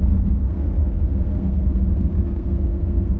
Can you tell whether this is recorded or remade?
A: remade